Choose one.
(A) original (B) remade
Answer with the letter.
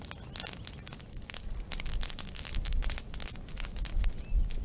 A